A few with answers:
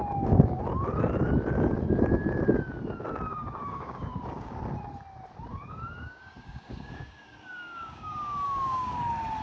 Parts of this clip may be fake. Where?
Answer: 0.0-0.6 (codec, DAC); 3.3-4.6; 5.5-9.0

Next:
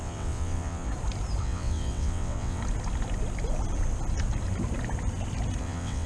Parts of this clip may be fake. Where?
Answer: 0.0-0.9 (vocoder, WaveNeXt); 1.4-2.6; 5.6-6.1

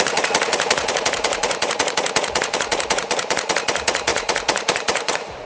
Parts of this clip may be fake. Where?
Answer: 0.0-5.5 (vocoder, Vocos)

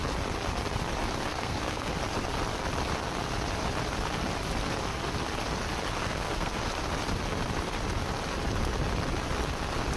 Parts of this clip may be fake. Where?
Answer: 1.3-1.9 (codec, SNAC); 6.0-6.7

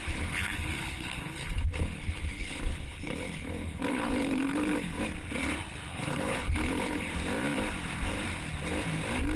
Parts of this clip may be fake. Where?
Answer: 0.0-5.0 (codec, HILCodec); 5.9-7.1